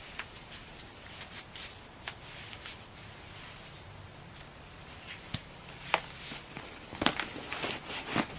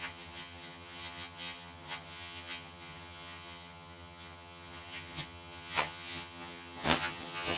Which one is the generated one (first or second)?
second